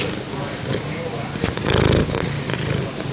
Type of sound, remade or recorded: recorded